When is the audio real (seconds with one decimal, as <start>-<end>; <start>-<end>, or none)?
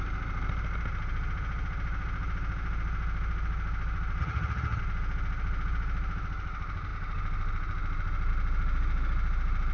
0.0-4.2; 4.8-9.7